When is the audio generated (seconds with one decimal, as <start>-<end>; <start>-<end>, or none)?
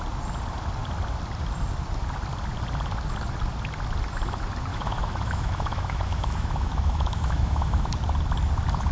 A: 4.7-7.9